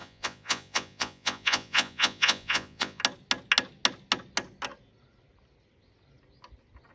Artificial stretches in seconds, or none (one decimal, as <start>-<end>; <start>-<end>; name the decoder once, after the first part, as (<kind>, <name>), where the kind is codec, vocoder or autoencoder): 0.0-3.0 (vocoder, Vocos)